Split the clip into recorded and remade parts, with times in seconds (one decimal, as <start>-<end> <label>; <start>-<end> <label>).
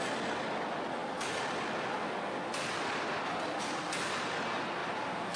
0.0-5.4 recorded